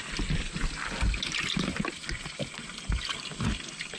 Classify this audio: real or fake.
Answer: real